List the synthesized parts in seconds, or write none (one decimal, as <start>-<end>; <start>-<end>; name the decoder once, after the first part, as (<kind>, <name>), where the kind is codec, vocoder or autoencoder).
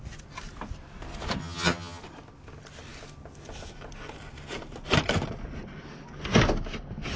1.4-2.0 (vocoder, HiFi-GAN)